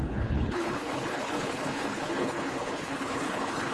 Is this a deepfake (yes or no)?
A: yes